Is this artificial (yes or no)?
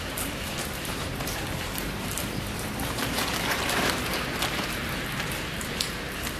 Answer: yes